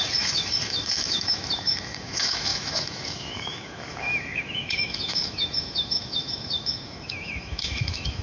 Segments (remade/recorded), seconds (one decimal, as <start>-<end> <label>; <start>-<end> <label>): 0.0-8.2 remade